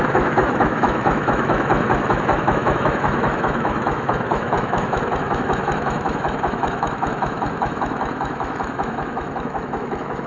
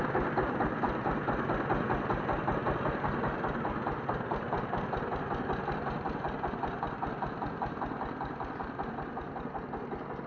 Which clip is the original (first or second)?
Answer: second